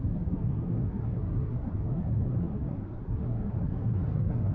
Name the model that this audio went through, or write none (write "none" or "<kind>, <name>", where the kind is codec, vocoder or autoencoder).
codec, SNAC